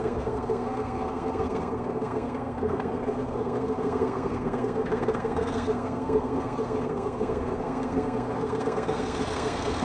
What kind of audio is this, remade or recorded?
remade